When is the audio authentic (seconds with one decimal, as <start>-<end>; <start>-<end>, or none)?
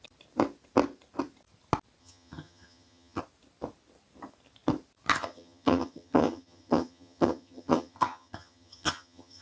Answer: 0.0-2.0; 3.2-5.1